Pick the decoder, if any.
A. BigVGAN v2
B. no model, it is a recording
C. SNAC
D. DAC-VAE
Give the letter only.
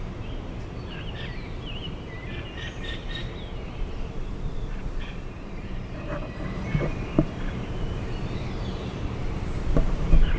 A